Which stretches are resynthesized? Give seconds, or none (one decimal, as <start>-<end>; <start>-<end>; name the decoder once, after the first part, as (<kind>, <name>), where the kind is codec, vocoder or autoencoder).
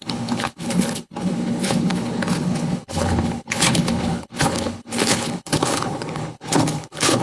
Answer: 0.0-7.2 (codec, HILCodec)